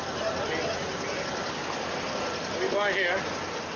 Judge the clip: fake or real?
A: real